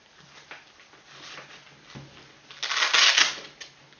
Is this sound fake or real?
real